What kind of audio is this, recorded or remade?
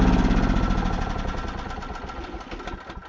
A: recorded